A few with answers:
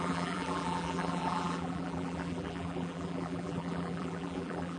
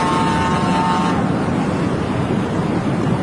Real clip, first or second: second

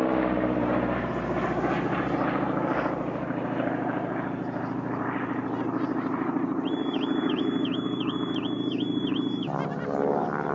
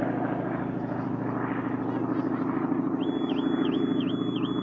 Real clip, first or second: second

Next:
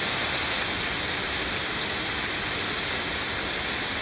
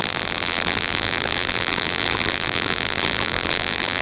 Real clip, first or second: first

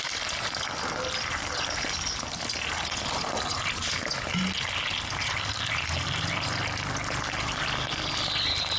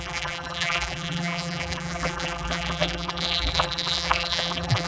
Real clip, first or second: first